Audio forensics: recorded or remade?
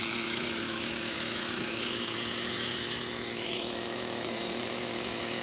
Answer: remade